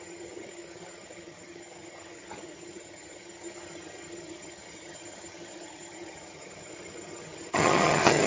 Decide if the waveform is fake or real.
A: fake